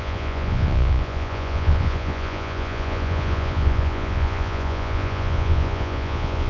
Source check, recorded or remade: remade